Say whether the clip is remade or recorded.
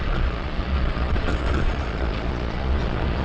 remade